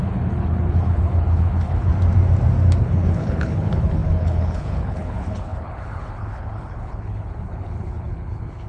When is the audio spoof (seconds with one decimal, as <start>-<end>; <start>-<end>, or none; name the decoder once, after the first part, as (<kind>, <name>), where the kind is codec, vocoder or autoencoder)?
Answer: 0.0-1.9 (codec, HILCodec); 2.8-8.7